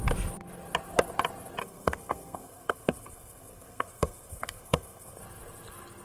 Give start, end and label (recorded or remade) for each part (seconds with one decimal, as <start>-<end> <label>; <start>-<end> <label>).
0.0-1.6 recorded; 1.6-5.2 remade; 5.2-6.0 recorded